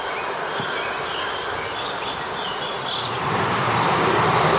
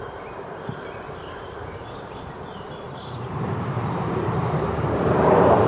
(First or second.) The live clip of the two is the first